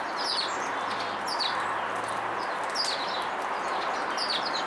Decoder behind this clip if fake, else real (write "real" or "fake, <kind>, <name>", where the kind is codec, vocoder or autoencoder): real